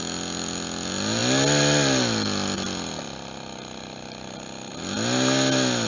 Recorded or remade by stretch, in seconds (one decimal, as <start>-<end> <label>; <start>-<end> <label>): 0.0-5.9 recorded